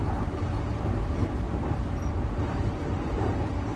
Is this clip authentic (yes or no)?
no